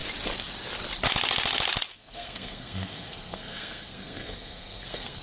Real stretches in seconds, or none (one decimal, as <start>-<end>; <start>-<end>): 0.0-1.9